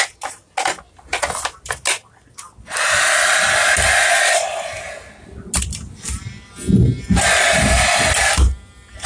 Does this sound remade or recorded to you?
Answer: recorded